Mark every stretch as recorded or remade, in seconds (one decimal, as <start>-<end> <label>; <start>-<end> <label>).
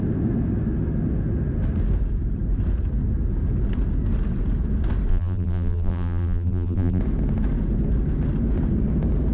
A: 0.0-5.1 recorded; 5.1-7.0 remade; 7.0-9.3 recorded